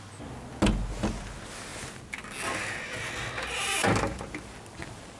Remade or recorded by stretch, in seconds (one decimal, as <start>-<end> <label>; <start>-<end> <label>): 0.0-5.2 recorded